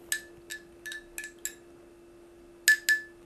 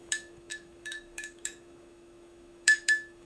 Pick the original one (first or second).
first